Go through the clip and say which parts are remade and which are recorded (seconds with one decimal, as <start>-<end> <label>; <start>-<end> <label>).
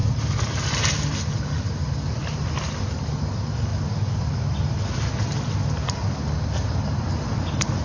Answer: 0.0-7.8 recorded